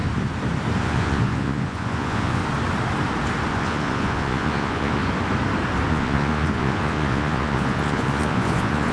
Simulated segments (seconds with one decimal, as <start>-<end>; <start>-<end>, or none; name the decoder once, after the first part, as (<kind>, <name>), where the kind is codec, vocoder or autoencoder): 0.8-2.4 (vocoder, Vocos); 3.5-5.0; 5.9-8.9